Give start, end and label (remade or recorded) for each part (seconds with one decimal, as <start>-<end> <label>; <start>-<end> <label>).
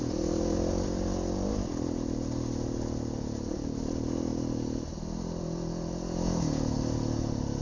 0.0-7.6 recorded